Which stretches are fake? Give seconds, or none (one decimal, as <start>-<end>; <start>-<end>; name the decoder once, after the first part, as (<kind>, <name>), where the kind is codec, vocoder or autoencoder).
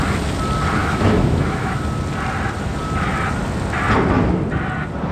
0.8-1.8 (autoencoder, DAC-VAE)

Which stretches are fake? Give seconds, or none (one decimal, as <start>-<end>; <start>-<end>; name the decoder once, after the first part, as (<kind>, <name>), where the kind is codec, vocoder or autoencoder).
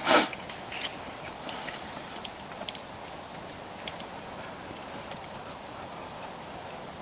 0.0-4.2 (vocoder, BigVGAN v2); 5.1-6.1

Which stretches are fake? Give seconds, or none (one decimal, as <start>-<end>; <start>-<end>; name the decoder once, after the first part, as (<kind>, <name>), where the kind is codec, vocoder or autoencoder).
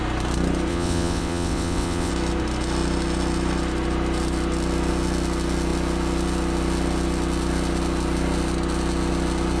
0.7-2.1 (vocoder, WaveNeXt)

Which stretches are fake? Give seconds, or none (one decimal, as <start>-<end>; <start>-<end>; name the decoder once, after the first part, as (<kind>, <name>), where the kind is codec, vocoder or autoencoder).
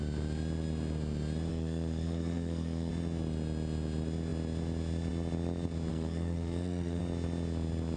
1.5-2.9 (codec, SNAC); 5.9-7.0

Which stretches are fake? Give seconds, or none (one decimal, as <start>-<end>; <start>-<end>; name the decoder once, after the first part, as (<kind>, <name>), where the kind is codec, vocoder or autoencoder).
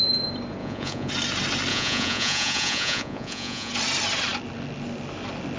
0.6-1.1 (vocoder, Vocos); 1.7-3.7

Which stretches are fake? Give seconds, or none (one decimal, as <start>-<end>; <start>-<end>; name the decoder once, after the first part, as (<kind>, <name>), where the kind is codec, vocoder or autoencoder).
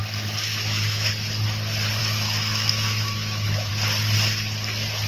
0.5-1.1 (autoencoder, DAC-VAE); 2.0-3.7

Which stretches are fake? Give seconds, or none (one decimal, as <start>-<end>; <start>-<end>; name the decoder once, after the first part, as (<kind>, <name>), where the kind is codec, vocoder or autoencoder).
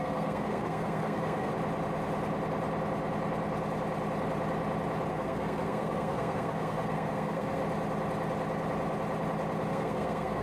0.0-1.5 (codec, SNAC); 5.1-7.6; 9.7-10.4